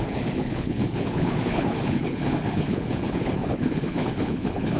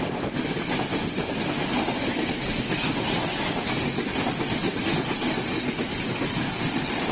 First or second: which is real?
second